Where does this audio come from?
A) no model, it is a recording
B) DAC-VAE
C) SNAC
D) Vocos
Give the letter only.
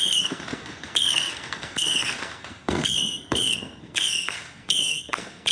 C